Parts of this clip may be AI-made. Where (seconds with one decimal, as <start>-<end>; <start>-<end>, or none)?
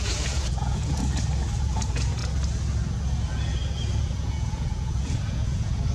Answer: 0.0-1.0; 1.6-2.2; 4.0-5.9